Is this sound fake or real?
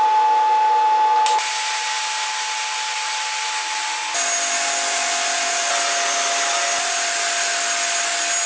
real